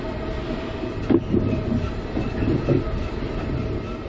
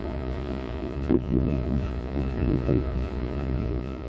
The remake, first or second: second